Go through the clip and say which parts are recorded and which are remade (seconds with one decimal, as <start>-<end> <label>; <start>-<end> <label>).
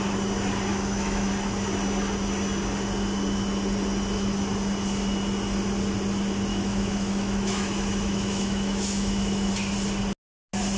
0.0-0.7 recorded; 0.7-1.3 remade; 1.3-6.5 recorded; 6.5-9.5 remade; 9.5-10.8 recorded